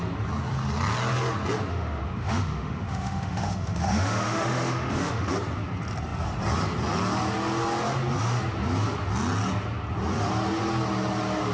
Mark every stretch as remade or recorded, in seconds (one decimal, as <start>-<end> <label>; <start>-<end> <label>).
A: 0.0-1.7 recorded; 1.7-5.3 remade; 5.3-11.5 recorded